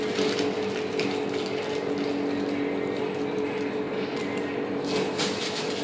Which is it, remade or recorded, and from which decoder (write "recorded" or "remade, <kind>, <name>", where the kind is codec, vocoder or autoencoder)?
recorded